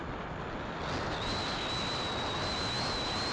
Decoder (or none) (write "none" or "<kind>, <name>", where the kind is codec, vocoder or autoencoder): none